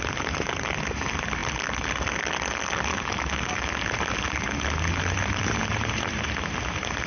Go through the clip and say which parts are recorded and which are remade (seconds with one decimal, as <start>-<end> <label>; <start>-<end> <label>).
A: 0.0-2.9 recorded; 2.9-3.7 remade; 3.7-7.1 recorded

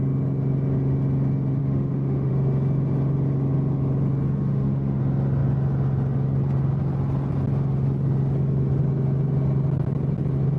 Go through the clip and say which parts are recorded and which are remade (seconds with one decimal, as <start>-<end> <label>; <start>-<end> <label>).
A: 0.0-1.6 recorded; 1.6-2.3 remade; 2.3-4.5 recorded; 4.5-5.0 remade; 5.0-10.6 recorded